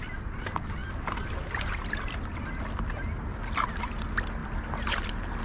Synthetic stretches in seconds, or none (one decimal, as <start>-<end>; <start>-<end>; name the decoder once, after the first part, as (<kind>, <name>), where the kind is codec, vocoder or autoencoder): 3.3-4.0 (vocoder, BigVGAN v2); 4.4-5.4

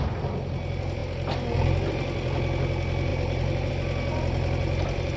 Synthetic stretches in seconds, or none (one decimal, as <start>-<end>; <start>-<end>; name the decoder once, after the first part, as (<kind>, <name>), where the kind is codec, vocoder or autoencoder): 3.1-3.7 (vocoder, BigVGAN v2)

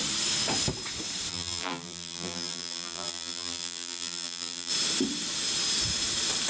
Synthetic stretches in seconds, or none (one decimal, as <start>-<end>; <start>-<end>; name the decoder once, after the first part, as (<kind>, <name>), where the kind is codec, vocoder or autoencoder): 1.3-4.7 (vocoder, BigVGAN v2)

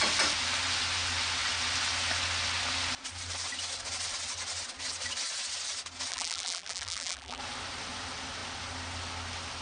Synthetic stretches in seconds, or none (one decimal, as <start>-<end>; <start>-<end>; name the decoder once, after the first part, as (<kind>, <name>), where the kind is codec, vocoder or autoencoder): 6.1-7.4 (vocoder, BigVGAN v2)